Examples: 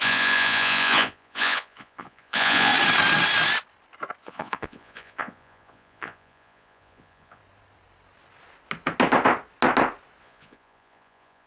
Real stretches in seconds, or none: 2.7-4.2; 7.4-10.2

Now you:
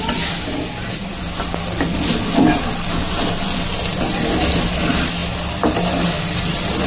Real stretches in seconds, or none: 0.0-6.9

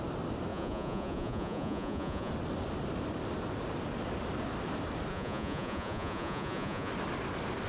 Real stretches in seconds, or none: 0.0-0.5; 2.3-5.1; 6.9-7.7

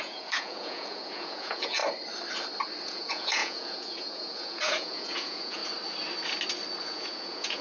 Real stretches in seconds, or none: 1.8-2.8; 5.6-6.8

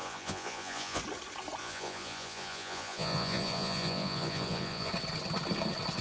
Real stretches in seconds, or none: 1.0-1.6; 4.9-6.0

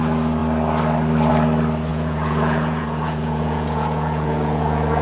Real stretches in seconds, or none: 0.0-1.9